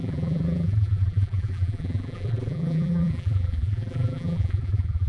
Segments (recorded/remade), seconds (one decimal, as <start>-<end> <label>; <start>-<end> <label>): 0.0-5.1 remade